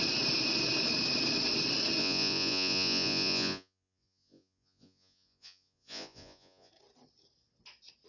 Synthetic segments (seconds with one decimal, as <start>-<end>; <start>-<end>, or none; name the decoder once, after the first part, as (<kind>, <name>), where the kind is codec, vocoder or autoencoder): 2.0-6.7 (vocoder, Vocos)